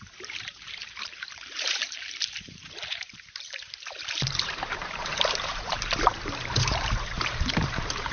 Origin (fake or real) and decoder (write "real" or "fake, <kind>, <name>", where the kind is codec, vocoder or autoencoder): fake, vocoder, BigVGAN v2